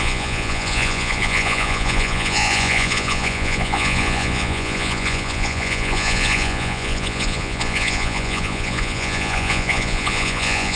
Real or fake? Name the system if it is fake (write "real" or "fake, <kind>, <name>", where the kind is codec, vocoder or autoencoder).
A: fake, vocoder, Vocos